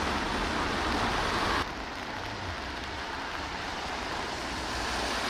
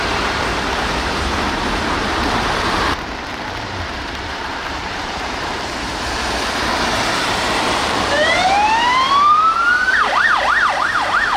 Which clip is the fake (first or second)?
second